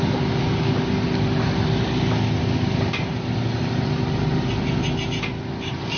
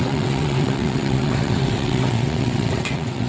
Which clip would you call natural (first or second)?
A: first